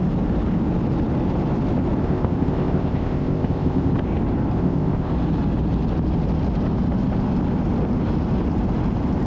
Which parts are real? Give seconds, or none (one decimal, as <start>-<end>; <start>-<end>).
0.0-2.0; 3.9-4.6; 5.1-9.3